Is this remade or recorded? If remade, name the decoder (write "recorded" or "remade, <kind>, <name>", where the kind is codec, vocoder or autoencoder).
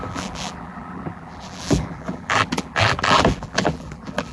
remade, vocoder, BigVGAN v2